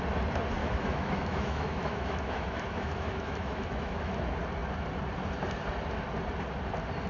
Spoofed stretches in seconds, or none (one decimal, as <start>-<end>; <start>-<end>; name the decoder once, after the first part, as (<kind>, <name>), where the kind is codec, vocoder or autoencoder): 0.6-4.1 (autoencoder, DAC-VAE)